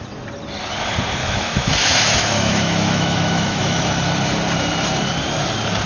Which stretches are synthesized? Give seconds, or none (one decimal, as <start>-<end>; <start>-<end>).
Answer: 1.2-3.9

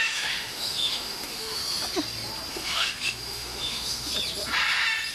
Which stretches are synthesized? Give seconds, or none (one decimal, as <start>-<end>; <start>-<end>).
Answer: 0.0-1.6; 2.5-4.1